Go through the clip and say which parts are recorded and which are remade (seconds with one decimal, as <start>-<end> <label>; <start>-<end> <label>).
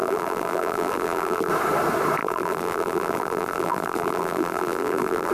0.0-1.5 remade; 1.5-2.2 recorded; 2.2-5.3 remade